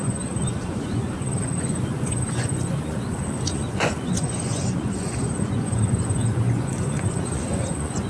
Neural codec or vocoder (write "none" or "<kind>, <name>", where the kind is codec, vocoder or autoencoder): vocoder, Vocos